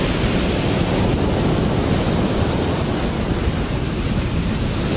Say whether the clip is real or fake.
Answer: real